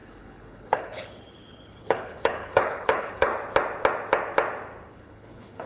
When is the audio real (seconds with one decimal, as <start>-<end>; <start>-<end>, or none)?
3.3-4.9